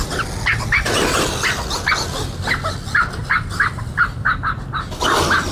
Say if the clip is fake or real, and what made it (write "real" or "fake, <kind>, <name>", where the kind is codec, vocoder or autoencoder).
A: real